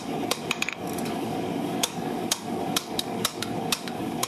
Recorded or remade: remade